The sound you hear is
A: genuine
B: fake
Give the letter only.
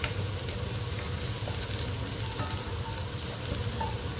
A